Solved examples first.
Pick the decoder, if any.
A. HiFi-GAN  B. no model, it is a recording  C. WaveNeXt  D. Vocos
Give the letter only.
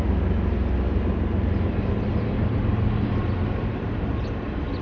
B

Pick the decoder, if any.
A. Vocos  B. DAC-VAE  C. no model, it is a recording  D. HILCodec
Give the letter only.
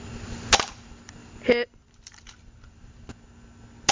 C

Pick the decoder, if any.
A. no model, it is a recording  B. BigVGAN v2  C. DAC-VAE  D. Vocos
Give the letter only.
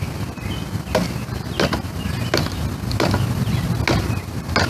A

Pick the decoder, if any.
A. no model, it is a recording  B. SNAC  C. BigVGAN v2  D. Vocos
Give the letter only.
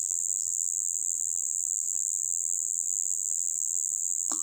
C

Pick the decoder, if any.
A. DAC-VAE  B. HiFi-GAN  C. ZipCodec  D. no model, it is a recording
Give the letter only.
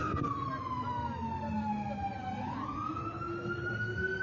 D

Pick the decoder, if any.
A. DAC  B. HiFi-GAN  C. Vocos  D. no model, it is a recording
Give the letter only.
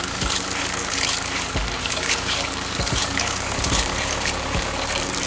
A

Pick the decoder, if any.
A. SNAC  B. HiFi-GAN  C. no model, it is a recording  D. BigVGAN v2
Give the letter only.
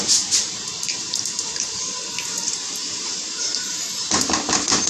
D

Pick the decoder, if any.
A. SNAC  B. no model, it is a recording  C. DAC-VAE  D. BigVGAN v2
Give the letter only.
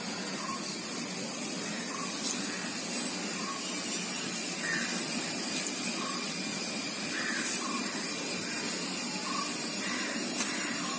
B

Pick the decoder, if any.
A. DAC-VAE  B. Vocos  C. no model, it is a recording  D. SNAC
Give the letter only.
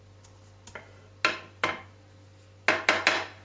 C